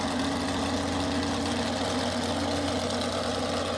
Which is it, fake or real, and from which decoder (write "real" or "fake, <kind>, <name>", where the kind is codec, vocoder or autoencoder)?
real